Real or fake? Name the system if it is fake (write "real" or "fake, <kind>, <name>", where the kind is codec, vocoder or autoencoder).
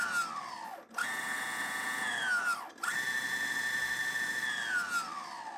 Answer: real